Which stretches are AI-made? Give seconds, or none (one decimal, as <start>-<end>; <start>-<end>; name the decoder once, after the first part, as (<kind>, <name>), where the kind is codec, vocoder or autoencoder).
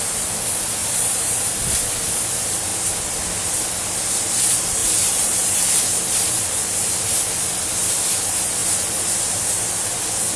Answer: 0.8-1.4 (vocoder, BigVGAN v2); 4.8-5.8